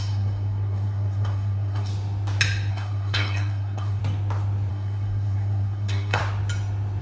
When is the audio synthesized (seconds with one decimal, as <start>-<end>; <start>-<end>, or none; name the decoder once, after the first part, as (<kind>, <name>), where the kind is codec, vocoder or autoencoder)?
0.0-1.9 (codec, SNAC); 2.7-4.0; 4.7-6.2